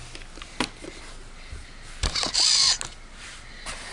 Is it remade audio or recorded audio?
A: recorded